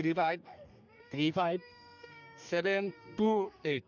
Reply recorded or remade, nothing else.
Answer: remade